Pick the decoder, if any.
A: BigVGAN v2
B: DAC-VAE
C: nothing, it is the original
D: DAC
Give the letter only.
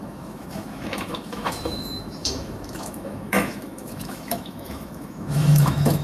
B